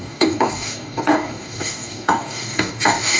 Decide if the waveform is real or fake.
fake